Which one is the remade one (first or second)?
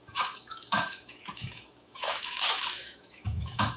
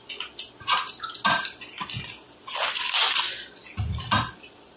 first